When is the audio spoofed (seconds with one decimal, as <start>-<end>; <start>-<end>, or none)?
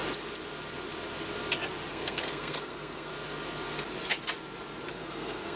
1.9-3.1; 4.9-5.6